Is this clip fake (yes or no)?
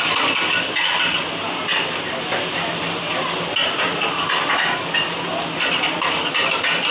no